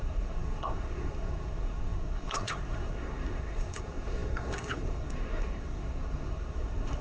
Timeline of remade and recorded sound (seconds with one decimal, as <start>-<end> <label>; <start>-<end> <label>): 0.0-7.0 remade